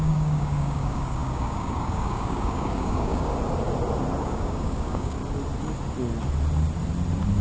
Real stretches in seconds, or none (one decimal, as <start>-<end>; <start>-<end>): 3.3-4.2; 5.2-7.4